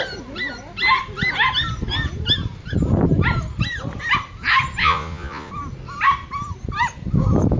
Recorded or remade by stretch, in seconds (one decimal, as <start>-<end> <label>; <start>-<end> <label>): 0.0-4.8 recorded; 4.8-5.5 remade; 5.5-7.6 recorded